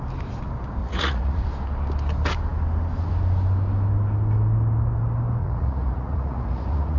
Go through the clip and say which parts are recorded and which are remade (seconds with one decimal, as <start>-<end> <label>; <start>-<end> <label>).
0.0-0.8 recorded; 0.8-1.4 remade; 1.4-5.4 recorded; 5.4-7.0 remade